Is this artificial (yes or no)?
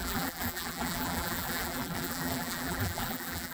yes